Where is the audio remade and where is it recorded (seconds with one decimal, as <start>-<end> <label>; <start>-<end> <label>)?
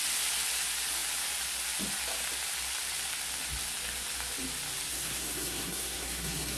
0.0-4.9 recorded; 4.9-6.6 remade